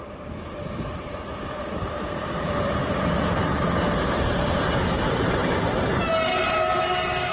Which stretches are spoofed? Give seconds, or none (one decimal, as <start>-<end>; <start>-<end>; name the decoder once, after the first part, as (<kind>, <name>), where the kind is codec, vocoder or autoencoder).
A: 0.0-7.3 (vocoder, BigVGAN v2)